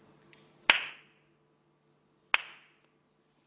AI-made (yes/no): no